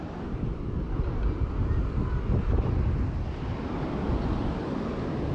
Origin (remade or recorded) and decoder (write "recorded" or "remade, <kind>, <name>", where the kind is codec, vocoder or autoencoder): recorded